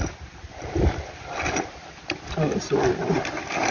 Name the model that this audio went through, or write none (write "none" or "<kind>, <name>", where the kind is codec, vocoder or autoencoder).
none